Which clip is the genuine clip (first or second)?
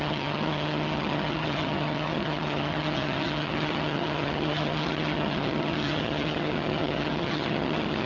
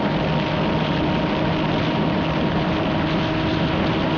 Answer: second